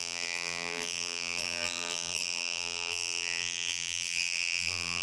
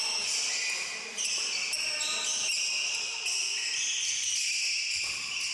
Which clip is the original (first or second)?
second